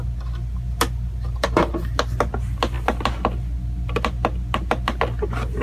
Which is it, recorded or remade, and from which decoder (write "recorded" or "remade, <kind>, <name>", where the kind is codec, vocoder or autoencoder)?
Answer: recorded